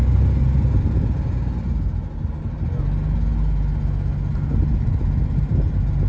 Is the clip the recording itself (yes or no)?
yes